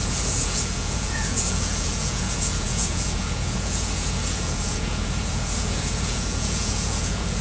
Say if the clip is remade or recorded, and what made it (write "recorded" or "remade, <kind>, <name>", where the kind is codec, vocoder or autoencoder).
remade, vocoder, Vocos